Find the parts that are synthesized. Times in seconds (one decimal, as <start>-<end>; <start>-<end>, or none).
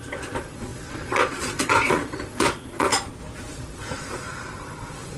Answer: 0.0-2.9; 3.5-5.2